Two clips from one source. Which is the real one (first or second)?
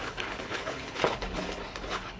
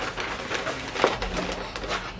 second